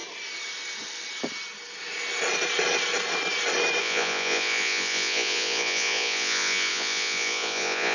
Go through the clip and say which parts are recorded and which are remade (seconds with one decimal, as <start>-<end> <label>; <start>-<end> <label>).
0.0-3.8 recorded; 3.8-7.9 remade